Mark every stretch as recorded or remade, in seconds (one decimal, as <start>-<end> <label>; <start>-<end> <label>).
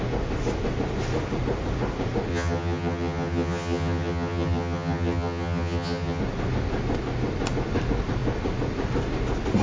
0.0-2.3 recorded; 2.3-6.2 remade; 6.2-9.6 recorded